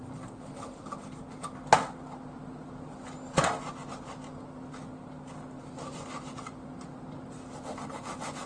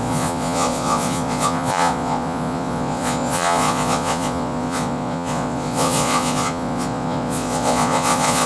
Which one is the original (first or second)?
first